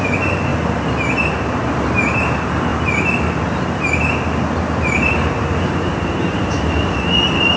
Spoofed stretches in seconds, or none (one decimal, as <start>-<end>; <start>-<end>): 0.0-7.6